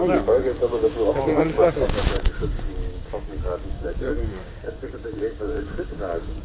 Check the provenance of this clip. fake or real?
fake